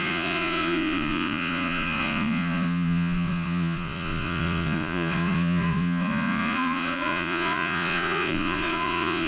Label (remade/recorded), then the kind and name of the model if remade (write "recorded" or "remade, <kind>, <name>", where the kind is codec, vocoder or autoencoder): remade, vocoder, Vocos